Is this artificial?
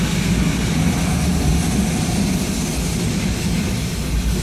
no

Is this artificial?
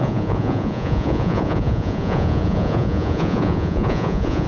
yes